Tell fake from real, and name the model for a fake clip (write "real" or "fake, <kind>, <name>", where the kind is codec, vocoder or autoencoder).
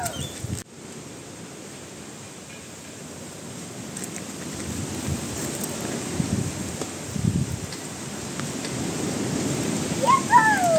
real